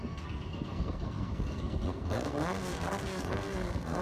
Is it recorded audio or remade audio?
remade